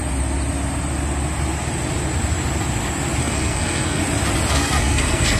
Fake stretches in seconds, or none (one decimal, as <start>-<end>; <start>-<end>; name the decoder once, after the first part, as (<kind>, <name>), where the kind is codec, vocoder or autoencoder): 3.2-4.0 (codec, SNAC); 4.5-5.4